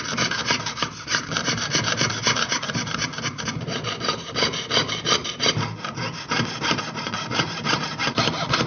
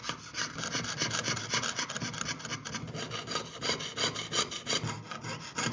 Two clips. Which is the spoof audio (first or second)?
first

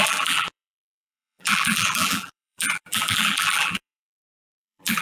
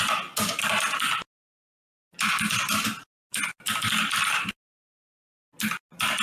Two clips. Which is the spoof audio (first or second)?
first